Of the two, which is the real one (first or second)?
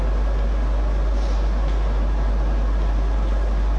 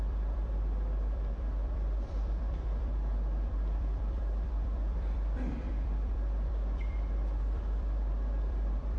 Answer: first